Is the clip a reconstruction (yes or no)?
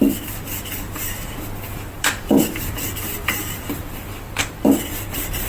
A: yes